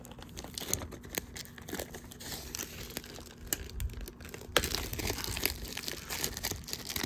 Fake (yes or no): no